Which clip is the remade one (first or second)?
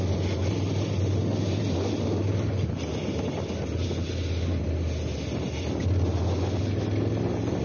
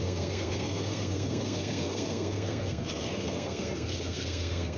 second